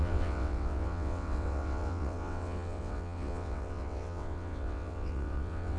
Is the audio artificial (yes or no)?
yes